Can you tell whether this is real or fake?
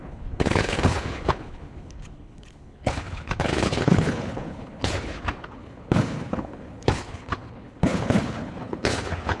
fake